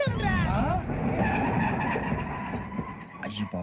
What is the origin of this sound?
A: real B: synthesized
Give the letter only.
A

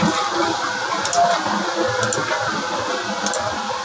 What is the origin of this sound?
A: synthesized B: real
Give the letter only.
B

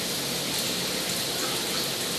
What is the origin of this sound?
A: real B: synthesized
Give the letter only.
A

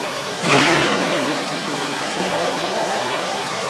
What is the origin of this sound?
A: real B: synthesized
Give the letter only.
B